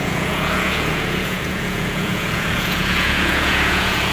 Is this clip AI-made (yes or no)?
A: yes